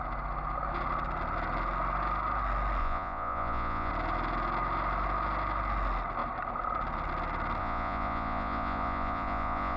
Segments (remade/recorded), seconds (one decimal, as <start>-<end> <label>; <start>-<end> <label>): 0.0-2.8 recorded; 2.8-3.9 remade; 3.9-7.6 recorded; 7.6-9.8 remade